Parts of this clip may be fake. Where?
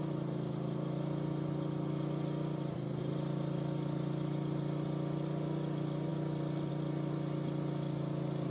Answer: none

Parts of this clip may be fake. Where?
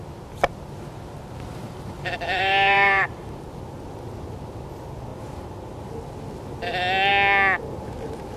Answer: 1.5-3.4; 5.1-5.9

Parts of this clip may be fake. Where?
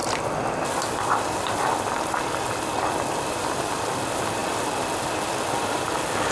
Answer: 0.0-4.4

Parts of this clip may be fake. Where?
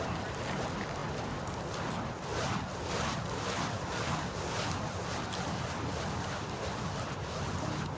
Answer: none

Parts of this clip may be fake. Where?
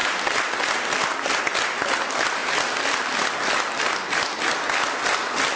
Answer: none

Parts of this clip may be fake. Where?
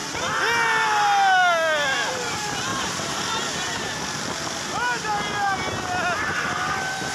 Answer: 2.7-3.2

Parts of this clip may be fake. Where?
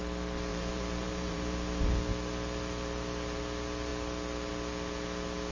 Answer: 0.5-1.8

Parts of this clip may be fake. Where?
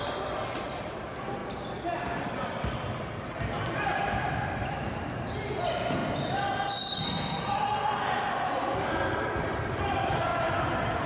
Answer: 0.0-1.4; 2.0-6.0; 7.0-11.1